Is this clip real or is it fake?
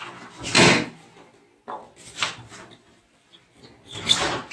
real